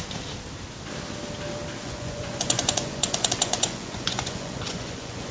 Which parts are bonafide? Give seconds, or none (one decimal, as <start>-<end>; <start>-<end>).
0.0-1.8